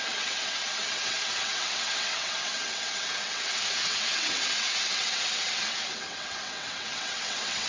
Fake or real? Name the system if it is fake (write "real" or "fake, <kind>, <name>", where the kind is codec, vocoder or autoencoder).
fake, vocoder, WaveNeXt